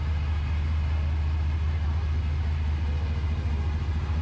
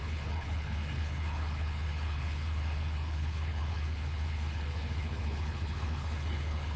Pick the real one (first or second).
first